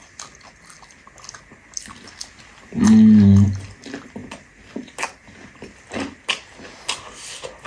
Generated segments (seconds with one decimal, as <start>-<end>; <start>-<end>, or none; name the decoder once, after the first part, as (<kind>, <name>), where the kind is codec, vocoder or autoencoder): none